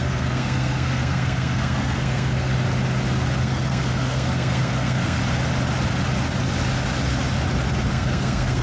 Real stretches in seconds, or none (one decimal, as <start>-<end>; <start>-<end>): 2.5-3.4; 5.2-7.9